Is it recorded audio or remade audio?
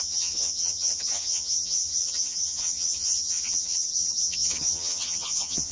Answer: remade